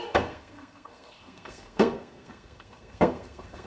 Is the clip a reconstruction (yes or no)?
yes